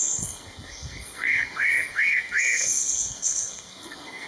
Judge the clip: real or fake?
fake